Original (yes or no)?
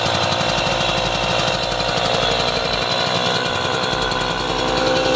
yes